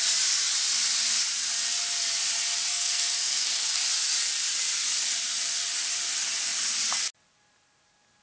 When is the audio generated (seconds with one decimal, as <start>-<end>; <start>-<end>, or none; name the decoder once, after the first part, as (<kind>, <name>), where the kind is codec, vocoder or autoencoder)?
2.7-3.8 (codec, SNAC)